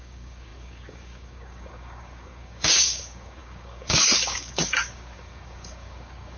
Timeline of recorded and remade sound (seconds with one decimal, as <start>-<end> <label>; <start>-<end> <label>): 0.0-6.4 remade